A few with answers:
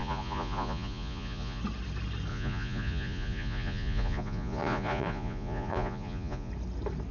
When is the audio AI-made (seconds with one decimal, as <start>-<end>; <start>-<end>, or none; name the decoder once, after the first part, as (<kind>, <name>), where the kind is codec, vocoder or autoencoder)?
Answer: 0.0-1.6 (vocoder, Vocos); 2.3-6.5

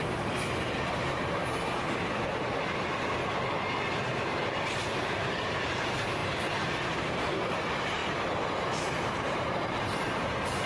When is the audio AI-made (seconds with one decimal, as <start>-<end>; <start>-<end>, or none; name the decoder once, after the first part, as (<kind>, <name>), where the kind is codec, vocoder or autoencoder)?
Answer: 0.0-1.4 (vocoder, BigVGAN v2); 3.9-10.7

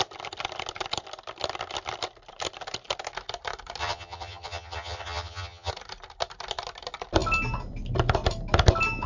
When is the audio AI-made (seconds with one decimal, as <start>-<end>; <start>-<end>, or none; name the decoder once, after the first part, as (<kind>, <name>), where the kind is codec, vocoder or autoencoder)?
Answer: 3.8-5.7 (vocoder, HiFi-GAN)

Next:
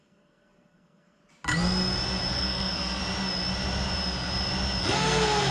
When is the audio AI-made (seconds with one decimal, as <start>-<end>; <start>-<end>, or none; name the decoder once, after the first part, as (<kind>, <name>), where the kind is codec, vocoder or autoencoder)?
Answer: 0.0-1.2 (codec, SNAC); 2.3-3.0; 4.8-5.5

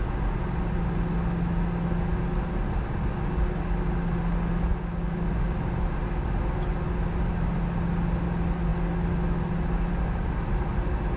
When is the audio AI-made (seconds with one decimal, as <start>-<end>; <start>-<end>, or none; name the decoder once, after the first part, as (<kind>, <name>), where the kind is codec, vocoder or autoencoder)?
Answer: none

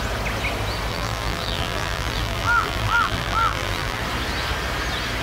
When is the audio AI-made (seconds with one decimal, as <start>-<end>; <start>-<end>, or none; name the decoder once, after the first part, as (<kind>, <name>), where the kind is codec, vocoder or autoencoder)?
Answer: 0.9-4.0 (vocoder, BigVGAN v2)

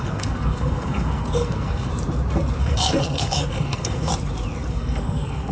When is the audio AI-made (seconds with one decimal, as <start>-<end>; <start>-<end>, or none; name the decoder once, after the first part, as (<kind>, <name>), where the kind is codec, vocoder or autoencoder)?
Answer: 0.0-1.9 (codec, SNAC); 2.6-4.1; 4.7-5.5

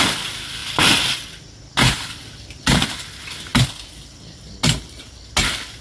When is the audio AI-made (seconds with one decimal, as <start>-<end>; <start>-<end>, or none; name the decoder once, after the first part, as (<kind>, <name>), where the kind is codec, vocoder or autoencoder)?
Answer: none